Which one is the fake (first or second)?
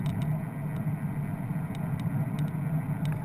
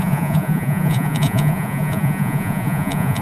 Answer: second